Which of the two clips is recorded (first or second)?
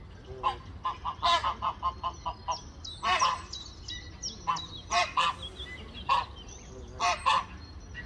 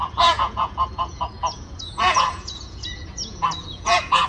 first